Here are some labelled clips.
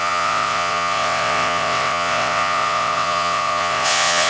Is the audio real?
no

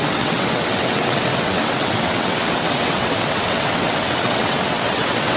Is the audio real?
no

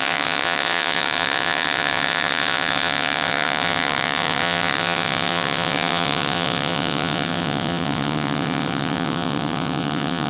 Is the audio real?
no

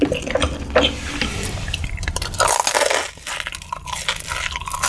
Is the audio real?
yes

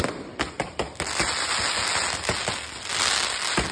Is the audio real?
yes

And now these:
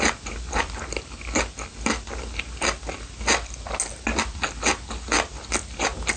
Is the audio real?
yes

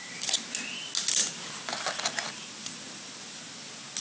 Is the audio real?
yes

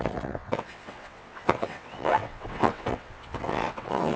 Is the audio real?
no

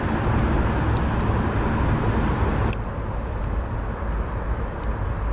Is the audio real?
yes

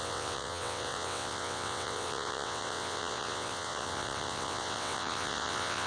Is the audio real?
no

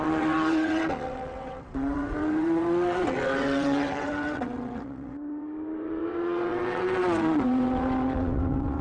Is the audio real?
no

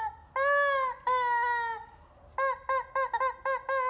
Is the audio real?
yes